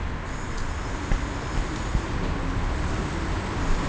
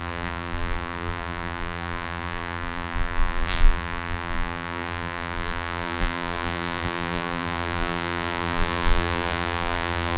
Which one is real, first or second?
first